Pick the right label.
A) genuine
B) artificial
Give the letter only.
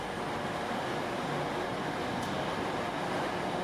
A